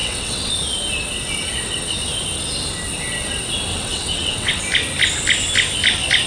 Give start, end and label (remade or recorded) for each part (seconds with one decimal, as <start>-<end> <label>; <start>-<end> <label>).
0.0-0.5 remade; 0.5-3.7 recorded; 3.7-4.6 remade; 4.6-6.3 recorded